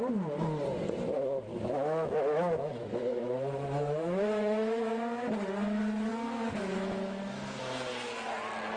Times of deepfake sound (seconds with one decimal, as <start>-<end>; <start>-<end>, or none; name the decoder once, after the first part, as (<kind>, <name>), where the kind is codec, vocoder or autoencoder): 1.5-4.8 (autoencoder, DAC-VAE); 6.1-7.6